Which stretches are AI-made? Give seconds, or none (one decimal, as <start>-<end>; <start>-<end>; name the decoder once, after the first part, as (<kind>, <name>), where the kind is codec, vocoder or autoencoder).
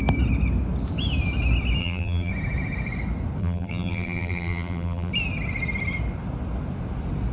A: 1.8-2.3 (vocoder, BigVGAN v2); 3.4-5.1